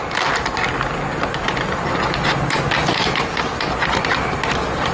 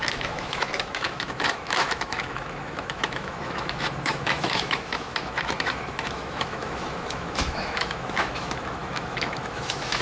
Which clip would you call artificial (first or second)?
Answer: second